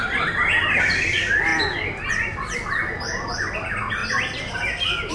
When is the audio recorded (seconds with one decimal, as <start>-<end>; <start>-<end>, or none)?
0.0-5.1